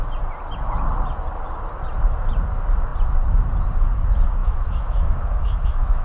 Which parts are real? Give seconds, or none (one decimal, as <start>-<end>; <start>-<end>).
0.0-4.4